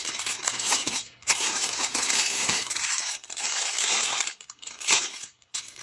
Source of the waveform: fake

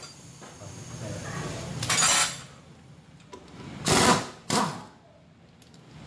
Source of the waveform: real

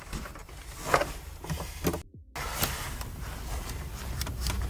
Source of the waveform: real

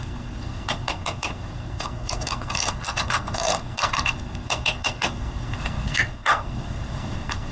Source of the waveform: fake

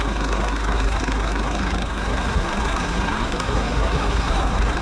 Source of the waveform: fake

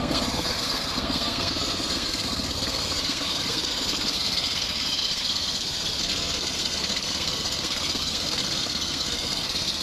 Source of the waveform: fake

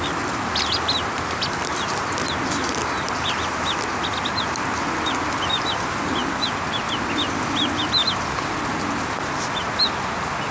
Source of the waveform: real